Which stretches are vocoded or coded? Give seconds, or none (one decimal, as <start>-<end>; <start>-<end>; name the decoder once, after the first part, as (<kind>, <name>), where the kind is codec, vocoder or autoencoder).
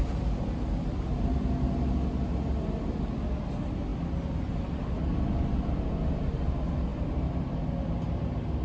none